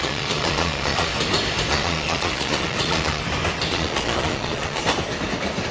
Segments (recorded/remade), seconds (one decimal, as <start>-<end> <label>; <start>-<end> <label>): 0.0-1.1 remade; 1.1-1.7 recorded; 1.7-3.2 remade; 3.2-3.7 recorded; 3.7-4.8 remade; 4.8-5.7 recorded